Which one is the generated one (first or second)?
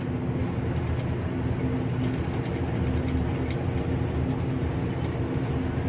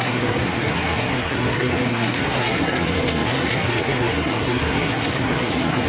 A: second